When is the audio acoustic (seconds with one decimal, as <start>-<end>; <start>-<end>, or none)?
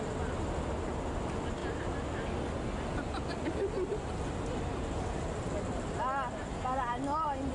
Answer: 0.0-7.5